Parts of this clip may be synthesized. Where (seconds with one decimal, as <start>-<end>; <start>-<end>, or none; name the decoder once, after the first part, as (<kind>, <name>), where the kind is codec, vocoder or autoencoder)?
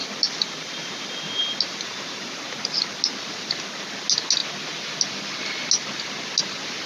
none